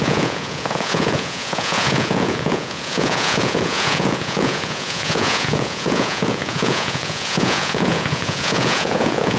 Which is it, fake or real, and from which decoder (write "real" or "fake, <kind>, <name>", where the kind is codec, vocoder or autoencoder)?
fake, vocoder, Vocos